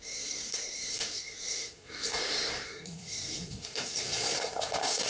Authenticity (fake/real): fake